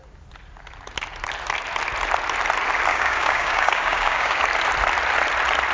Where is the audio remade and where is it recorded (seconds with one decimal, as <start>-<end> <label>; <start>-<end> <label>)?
0.0-2.9 recorded; 2.9-4.4 remade; 4.4-5.7 recorded